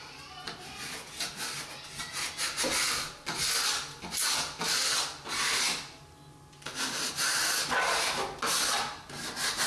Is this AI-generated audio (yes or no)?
no